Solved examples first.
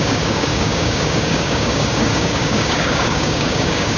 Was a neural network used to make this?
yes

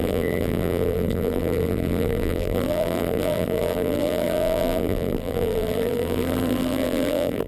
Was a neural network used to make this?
yes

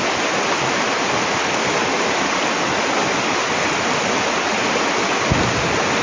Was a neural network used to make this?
no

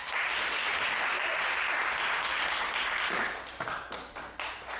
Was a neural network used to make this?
no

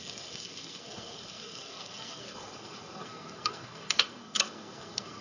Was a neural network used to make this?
yes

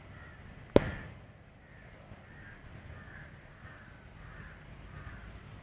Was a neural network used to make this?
no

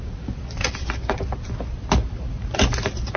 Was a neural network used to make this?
no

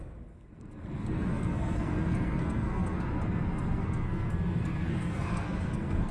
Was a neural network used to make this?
yes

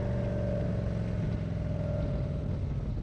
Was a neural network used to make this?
no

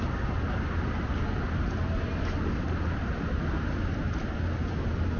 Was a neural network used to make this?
no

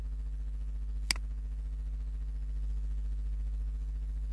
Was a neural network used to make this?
no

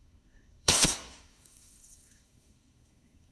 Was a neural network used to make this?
yes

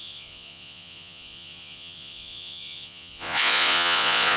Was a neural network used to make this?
yes